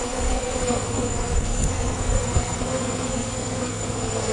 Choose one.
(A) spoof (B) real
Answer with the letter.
A